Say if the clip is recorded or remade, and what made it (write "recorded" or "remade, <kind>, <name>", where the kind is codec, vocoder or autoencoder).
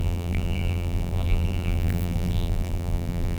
remade, vocoder, BigVGAN v2